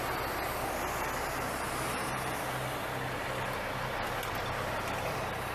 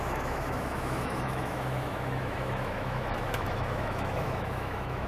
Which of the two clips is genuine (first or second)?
first